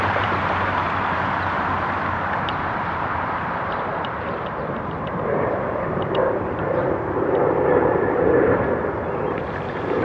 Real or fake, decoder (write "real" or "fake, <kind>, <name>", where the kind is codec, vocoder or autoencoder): fake, vocoder, BigVGAN v2